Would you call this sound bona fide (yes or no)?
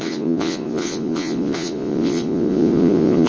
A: no